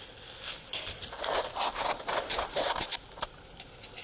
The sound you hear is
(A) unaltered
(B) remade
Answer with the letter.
A